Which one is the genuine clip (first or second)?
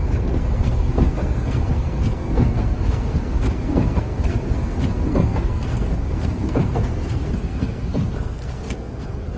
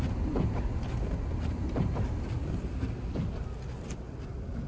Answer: second